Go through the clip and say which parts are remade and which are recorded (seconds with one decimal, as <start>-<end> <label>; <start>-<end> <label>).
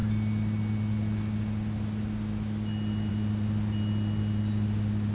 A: 0.0-5.1 recorded